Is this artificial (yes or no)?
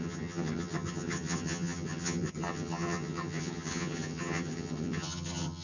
yes